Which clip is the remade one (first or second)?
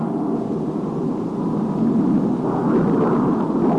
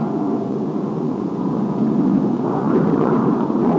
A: second